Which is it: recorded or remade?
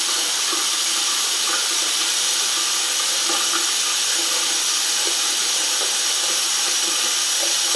recorded